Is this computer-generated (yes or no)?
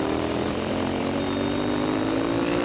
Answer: yes